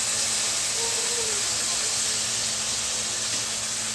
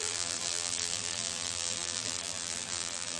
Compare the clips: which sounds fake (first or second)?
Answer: second